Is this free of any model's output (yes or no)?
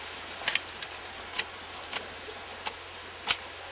yes